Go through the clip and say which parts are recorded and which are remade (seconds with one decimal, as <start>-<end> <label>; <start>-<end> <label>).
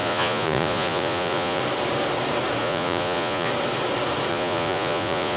0.0-1.6 remade; 1.6-2.6 recorded; 2.6-3.5 remade; 3.5-4.3 recorded; 4.3-5.4 remade